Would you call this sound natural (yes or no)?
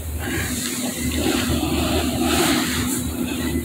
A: no